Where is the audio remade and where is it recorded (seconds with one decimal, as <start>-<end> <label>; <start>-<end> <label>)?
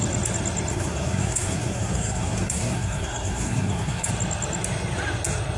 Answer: 0.0-0.7 recorded; 0.7-4.1 remade; 4.1-5.6 recorded